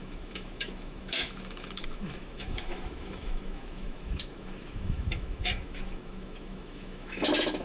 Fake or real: fake